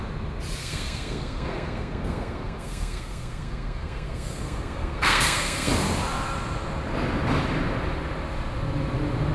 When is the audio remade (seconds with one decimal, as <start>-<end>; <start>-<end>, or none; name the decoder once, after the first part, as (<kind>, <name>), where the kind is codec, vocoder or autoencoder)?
0.6-5.7 (codec, SNAC)